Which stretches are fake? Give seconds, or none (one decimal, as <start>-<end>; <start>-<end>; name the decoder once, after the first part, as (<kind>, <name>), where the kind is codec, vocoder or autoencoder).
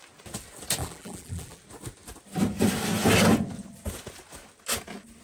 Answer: 0.8-1.6 (vocoder, BigVGAN v2)